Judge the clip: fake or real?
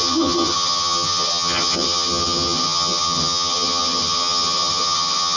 fake